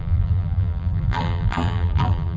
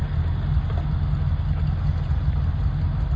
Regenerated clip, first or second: first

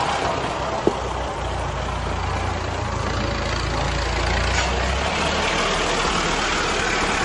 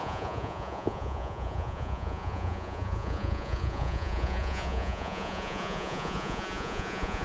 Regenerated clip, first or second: second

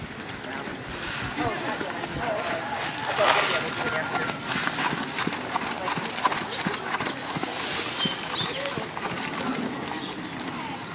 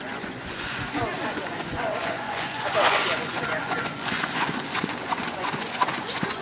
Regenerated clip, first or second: second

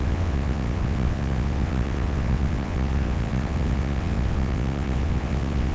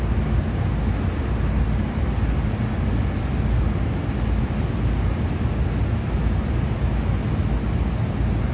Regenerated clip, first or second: first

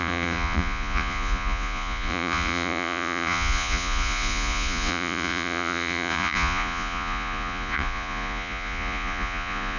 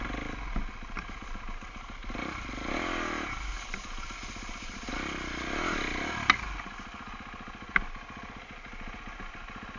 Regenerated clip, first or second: first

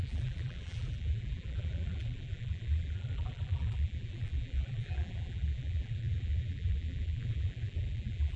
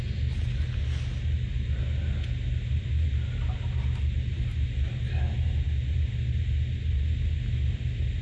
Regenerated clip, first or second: first